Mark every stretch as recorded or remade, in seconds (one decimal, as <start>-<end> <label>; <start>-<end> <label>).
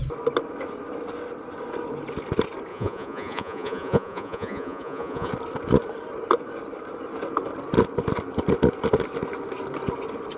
0.0-2.7 recorded; 2.7-5.3 remade; 5.3-10.4 recorded